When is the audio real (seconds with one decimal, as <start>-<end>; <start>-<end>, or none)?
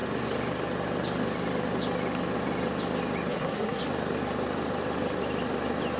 0.0-3.3; 3.8-6.0